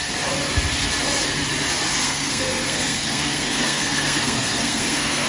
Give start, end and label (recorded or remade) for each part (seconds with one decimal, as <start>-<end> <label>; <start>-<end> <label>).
0.0-2.0 recorded; 2.0-5.3 remade